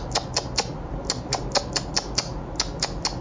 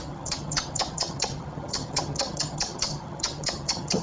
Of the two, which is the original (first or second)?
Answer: first